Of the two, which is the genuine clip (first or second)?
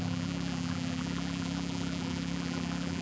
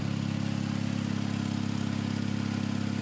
second